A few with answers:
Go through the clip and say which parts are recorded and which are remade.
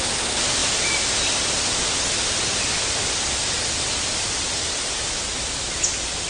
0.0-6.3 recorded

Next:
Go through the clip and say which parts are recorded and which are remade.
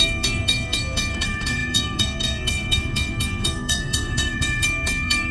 0.0-5.3 remade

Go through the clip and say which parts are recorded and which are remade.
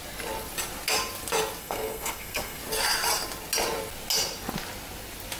0.0-1.6 recorded; 1.6-2.6 remade; 2.6-5.4 recorded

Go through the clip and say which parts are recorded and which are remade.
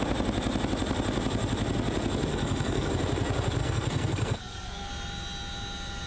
0.0-2.3 recorded; 2.3-2.9 remade; 2.9-3.6 recorded; 3.6-4.9 remade; 4.9-6.1 recorded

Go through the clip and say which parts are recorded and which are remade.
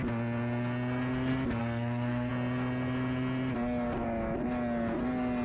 0.0-1.6 recorded; 1.6-2.3 remade; 2.3-5.4 recorded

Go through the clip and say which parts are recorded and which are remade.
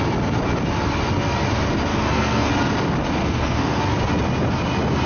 0.0-1.9 recorded; 1.9-2.5 remade; 2.5-3.2 recorded; 3.2-3.8 remade; 3.8-5.1 recorded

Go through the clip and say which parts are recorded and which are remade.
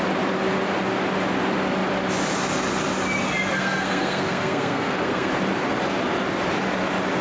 0.0-3.5 recorded; 3.5-5.3 remade; 5.3-7.2 recorded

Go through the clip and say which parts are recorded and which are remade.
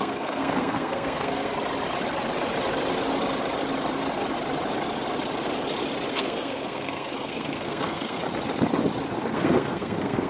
0.0-1.5 remade; 1.5-6.1 recorded; 6.1-8.2 remade; 8.2-9.2 recorded; 9.2-10.3 remade